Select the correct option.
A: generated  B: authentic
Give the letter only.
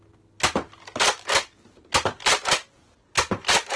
B